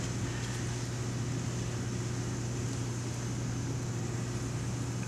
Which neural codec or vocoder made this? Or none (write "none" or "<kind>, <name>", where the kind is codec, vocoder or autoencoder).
none